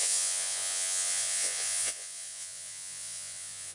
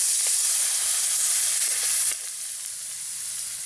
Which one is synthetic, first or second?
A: first